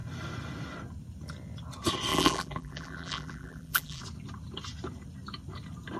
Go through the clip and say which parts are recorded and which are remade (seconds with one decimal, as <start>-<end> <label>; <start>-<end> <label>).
0.0-2.1 recorded; 2.1-4.0 remade; 4.0-6.0 recorded